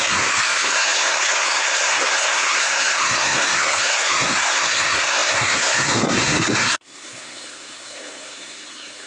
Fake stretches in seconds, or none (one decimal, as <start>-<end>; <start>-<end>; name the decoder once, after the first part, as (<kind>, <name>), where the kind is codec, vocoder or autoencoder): 0.0-9.1 (codec, SNAC)